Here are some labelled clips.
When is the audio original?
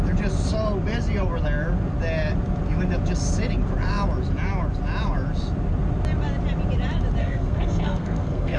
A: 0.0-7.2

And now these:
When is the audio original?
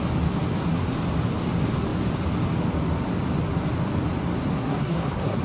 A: 0.0-4.5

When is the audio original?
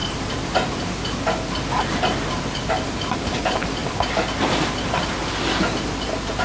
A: none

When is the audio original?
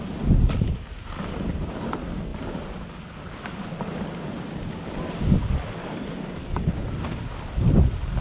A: 0.0-5.8; 6.7-8.2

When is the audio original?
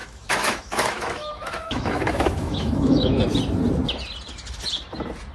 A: 3.2-5.3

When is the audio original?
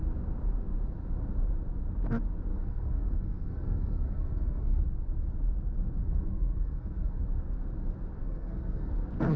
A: 0.0-2.5; 4.8-6.0; 7.2-8.2; 8.9-9.4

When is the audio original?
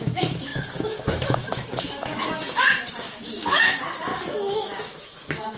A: none